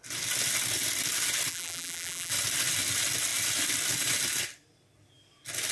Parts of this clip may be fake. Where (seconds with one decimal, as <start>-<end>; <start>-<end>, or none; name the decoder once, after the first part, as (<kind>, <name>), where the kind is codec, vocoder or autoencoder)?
1.5-2.3 (vocoder, BigVGAN v2)